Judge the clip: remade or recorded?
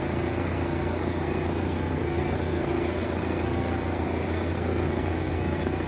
remade